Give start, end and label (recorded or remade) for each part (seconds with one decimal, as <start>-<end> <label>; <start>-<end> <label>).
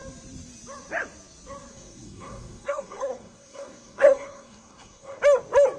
0.0-1.7 recorded; 1.7-5.2 remade; 5.2-5.8 recorded